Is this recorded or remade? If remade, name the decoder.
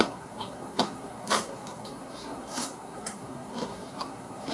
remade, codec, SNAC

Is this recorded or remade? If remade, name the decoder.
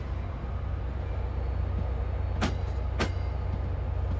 recorded